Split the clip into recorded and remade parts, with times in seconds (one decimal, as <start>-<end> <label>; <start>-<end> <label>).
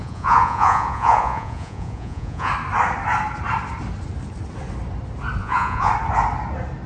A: 0.0-2.5 remade; 2.5-5.4 recorded; 5.4-5.9 remade; 5.9-6.9 recorded